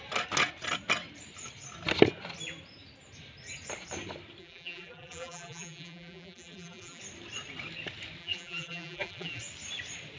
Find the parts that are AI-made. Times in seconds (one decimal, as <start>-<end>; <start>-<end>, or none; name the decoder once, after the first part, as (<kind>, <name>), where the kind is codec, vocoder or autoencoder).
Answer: 4.4-7.0 (vocoder, BigVGAN v2); 8.2-9.4